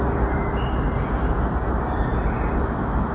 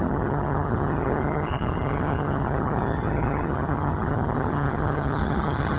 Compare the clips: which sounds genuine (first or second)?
first